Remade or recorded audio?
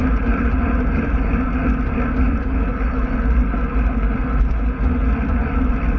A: recorded